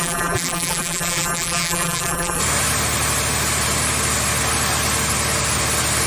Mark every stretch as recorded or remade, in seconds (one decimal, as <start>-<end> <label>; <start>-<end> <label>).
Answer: 0.0-2.4 remade; 2.4-6.1 recorded